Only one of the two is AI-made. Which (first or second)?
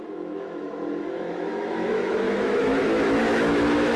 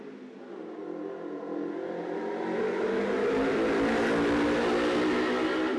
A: first